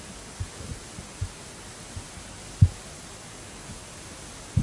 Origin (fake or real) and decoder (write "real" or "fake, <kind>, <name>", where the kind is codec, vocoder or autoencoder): real